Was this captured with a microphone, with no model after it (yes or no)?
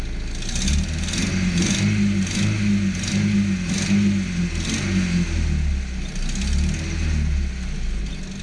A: yes